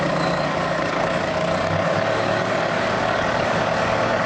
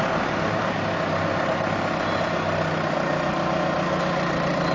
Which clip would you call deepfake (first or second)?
first